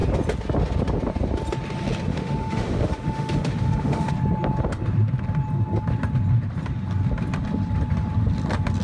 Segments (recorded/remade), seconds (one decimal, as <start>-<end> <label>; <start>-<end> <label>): 0.0-2.1 recorded; 2.1-4.1 remade; 4.1-8.8 recorded